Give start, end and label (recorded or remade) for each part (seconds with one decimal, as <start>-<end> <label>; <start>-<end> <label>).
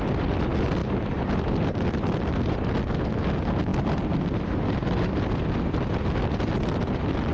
0.0-7.3 recorded